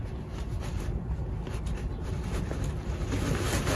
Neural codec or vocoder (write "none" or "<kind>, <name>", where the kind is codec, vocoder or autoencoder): none